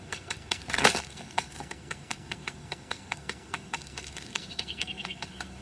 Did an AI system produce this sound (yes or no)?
yes